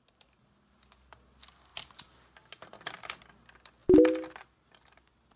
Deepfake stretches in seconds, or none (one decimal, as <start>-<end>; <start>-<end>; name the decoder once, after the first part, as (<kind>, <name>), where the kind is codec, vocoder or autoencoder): none